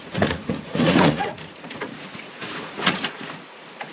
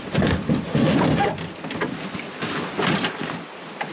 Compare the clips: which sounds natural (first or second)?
second